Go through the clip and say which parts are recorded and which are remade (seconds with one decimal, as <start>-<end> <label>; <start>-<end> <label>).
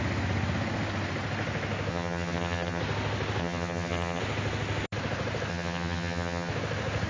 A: 0.0-1.9 recorded; 1.9-2.8 remade; 2.8-3.4 recorded; 3.4-4.2 remade; 4.2-5.5 recorded; 5.5-6.5 remade; 6.5-7.1 recorded